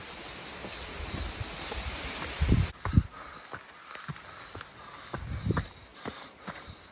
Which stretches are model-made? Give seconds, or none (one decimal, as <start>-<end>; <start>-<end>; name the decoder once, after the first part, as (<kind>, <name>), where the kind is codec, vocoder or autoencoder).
5.9-6.9 (vocoder, BigVGAN v2)